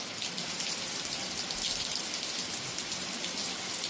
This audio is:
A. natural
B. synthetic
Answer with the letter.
A